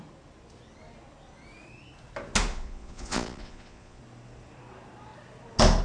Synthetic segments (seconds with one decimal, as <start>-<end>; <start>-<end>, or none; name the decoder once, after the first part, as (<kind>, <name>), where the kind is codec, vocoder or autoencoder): 2.5-4.0 (vocoder, Vocos)